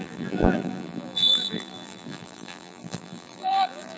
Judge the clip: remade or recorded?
remade